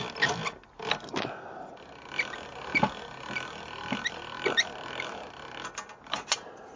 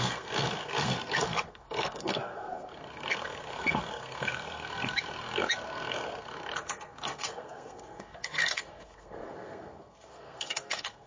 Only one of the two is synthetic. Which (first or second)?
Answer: second